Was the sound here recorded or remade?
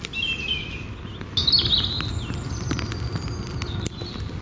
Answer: recorded